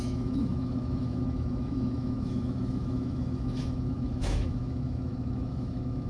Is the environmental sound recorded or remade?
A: remade